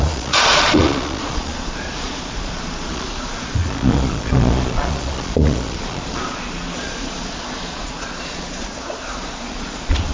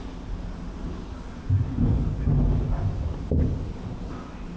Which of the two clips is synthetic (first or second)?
first